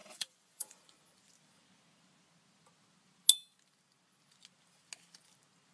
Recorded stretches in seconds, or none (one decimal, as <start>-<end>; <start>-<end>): 0.8-5.7